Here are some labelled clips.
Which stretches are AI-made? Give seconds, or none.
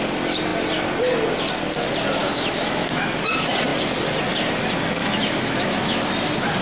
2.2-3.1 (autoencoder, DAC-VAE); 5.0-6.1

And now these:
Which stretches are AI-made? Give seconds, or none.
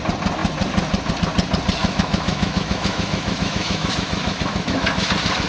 1.8-5.1 (autoencoder, DAC-VAE)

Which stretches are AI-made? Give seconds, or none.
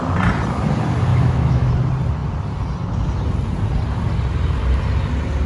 1.1-1.7 (autoencoder, DAC-VAE)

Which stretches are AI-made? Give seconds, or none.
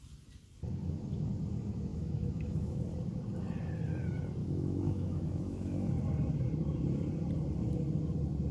1.9-2.8 (autoencoder, DAC-VAE); 4.4-5.9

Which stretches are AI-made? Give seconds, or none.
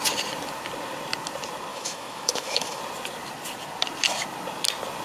1.7-2.8 (autoencoder, DAC-VAE)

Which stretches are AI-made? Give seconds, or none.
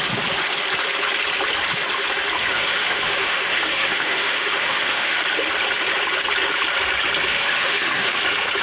2.4-5.2 (autoencoder, DAC-VAE); 7.3-8.2